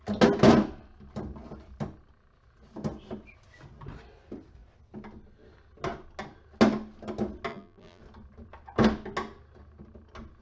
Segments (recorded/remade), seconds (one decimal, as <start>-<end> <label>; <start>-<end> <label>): 0.0-7.5 recorded; 7.5-8.0 remade; 8.0-10.4 recorded